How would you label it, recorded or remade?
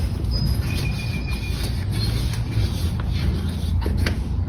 recorded